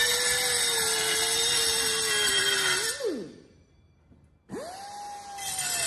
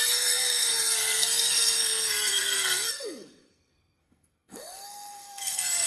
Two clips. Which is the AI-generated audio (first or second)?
second